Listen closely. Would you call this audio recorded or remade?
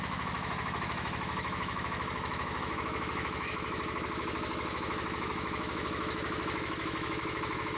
remade